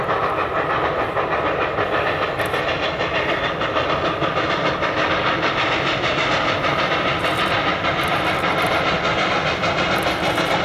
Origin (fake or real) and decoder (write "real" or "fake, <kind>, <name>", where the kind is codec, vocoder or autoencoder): real